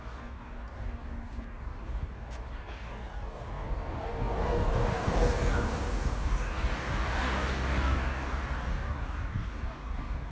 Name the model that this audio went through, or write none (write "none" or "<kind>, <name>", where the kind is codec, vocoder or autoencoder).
codec, DAC